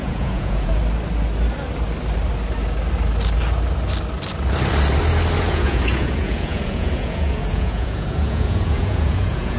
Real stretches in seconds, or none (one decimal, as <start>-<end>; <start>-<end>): 0.8-5.4